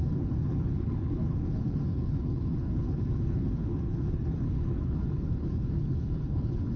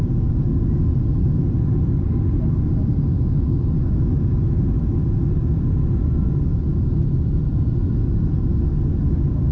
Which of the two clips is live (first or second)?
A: second